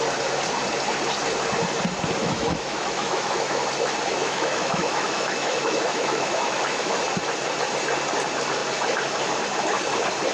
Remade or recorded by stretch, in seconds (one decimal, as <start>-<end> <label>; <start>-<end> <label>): 0.0-2.2 recorded; 2.2-3.6 remade; 3.6-4.2 recorded; 4.2-7.0 remade; 7.0-10.3 recorded